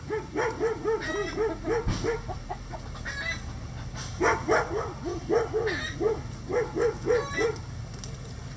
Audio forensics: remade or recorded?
recorded